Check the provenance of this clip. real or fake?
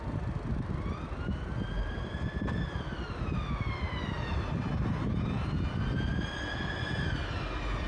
real